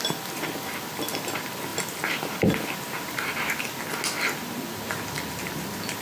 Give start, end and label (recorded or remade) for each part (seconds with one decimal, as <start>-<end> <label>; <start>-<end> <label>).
0.0-6.0 recorded